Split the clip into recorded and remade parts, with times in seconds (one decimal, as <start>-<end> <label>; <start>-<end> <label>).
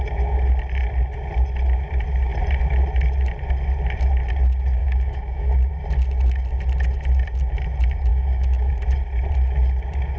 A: 0.0-4.8 recorded; 4.8-5.7 remade; 5.7-8.1 recorded; 8.1-8.7 remade; 8.7-10.2 recorded